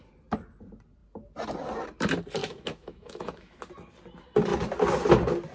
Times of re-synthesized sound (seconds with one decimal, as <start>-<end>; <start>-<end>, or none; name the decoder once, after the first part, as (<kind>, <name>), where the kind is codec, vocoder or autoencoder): 2.4-3.6 (autoencoder, DAC-VAE)